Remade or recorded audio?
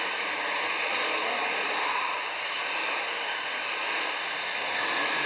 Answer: recorded